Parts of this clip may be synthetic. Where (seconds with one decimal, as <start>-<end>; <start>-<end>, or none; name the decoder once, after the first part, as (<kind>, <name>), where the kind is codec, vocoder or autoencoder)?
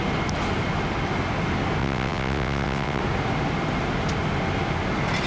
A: 1.8-3.0 (vocoder, WaveNeXt)